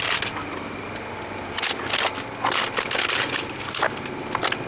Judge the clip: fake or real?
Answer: real